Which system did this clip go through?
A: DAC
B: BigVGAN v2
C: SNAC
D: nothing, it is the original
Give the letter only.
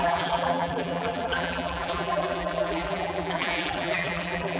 B